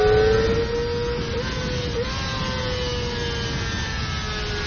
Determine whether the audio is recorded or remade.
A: recorded